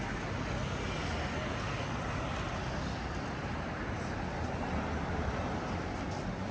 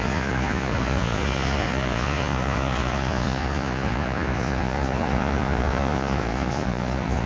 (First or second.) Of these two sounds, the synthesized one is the second